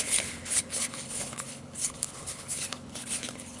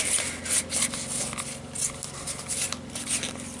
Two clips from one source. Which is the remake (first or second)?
first